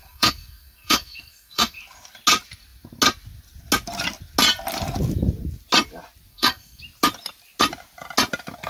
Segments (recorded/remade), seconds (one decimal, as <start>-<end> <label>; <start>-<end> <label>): 0.0-1.8 remade; 1.8-6.3 recorded; 6.3-6.8 remade; 6.8-8.7 recorded